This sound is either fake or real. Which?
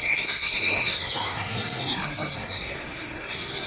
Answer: fake